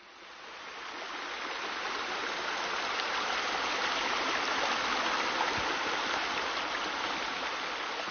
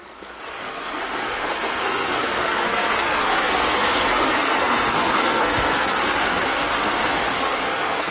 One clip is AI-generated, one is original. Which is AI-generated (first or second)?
second